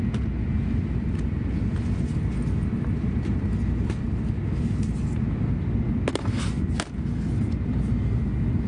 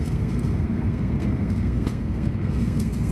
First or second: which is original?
first